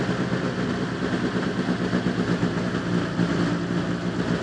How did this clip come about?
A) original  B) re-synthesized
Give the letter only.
A